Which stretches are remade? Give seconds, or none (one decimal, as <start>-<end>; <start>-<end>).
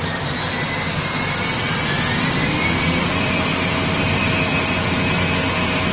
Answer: 2.4-4.8